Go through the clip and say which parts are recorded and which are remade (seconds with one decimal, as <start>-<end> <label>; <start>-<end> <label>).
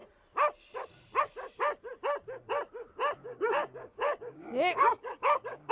0.0-3.2 recorded; 3.2-5.7 remade